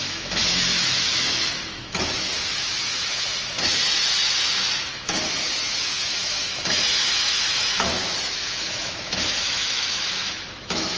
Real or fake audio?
fake